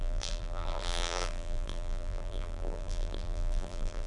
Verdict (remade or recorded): remade